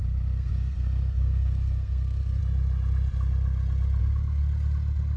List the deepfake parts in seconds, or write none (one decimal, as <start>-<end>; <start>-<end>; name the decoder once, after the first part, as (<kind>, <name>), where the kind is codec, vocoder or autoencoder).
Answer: 0.0-2.4 (codec, SNAC); 4.0-4.4